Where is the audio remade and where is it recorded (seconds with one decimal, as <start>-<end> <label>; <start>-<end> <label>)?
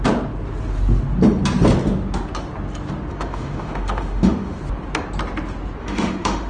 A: 0.0-3.1 recorded; 3.1-4.6 remade; 4.6-5.8 recorded; 5.8-6.5 remade